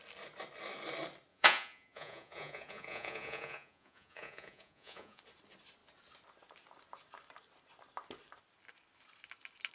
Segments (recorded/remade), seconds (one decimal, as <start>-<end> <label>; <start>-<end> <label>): 0.0-1.3 recorded; 1.3-5.2 remade; 5.2-9.7 recorded